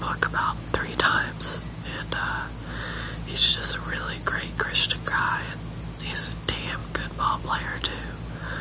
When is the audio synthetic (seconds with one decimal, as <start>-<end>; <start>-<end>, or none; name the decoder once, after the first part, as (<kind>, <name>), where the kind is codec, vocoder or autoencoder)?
none